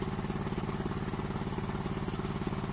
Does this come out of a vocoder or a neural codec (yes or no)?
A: no